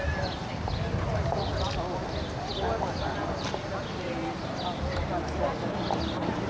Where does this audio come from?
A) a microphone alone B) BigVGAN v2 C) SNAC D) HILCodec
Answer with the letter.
A